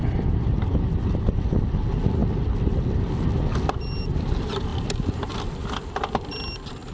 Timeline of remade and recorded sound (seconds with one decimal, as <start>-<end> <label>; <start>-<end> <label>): 0.0-6.9 recorded